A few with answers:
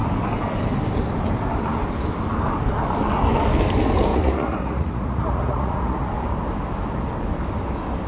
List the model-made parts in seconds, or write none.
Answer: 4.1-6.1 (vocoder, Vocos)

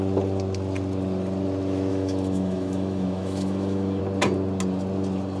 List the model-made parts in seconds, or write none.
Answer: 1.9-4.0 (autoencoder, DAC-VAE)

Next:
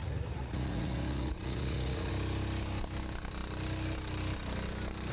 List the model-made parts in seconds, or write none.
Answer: 0.0-2.1 (vocoder, Vocos)

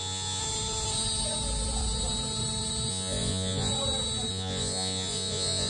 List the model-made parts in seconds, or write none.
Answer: 0.0-0.4 (vocoder, Vocos); 2.9-3.7; 4.3-5.7

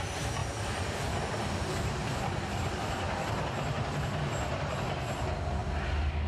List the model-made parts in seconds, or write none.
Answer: 0.4-1.5 (vocoder, BigVGAN v2); 2.0-3.0

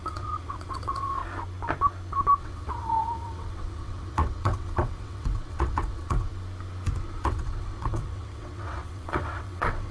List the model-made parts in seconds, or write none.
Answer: 0.0-1.2 (vocoder, WaveNeXt); 2.4-6.3; 7.0-9.9

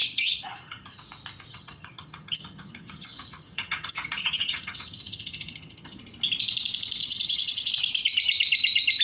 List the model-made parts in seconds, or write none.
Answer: 0.0-1.0 (vocoder, HiFi-GAN); 1.5-6.0; 7.0-7.7